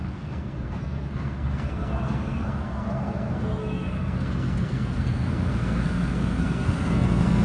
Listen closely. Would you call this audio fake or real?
fake